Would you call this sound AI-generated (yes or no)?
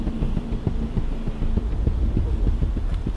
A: no